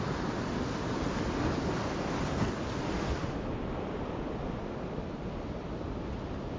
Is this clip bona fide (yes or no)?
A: yes